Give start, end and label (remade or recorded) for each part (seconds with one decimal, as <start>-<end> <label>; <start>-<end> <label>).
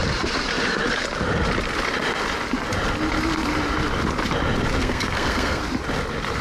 0.0-4.8 recorded; 4.8-5.6 remade; 5.6-6.4 recorded